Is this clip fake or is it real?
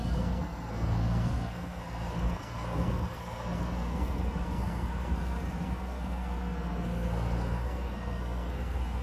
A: fake